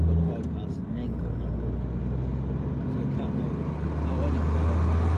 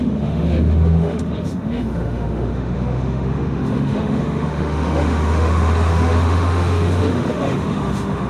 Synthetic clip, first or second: second